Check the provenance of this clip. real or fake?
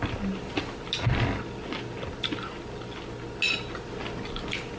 real